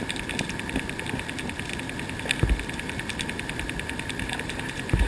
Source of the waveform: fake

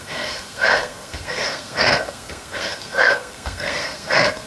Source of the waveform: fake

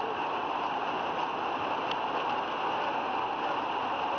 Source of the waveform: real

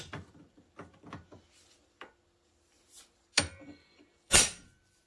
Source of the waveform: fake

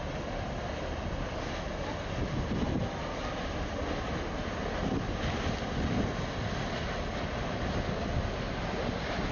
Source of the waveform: real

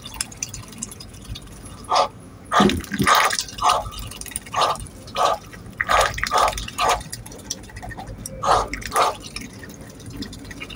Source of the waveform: real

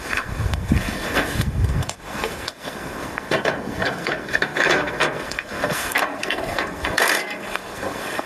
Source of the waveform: fake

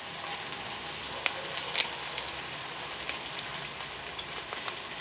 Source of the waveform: real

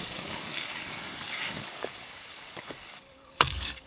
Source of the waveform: fake